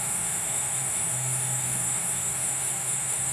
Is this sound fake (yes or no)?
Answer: yes